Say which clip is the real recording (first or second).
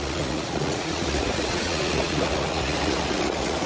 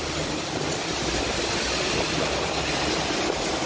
second